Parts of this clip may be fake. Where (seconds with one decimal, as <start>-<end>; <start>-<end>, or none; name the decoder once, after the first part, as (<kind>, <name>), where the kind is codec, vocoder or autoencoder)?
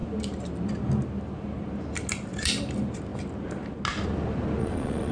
4.6-5.1 (vocoder, Vocos)